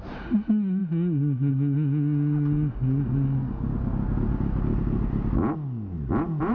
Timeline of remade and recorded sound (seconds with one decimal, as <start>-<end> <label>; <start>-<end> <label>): 0.0-6.5 recorded